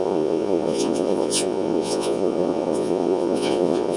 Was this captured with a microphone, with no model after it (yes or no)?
no